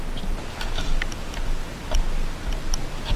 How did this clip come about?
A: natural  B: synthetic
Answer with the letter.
A